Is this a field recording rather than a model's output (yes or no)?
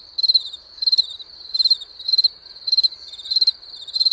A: no